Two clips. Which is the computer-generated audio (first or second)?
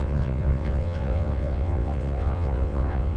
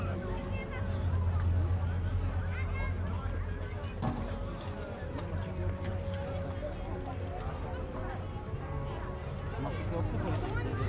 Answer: first